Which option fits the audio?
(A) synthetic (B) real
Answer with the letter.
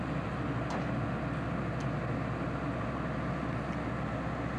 B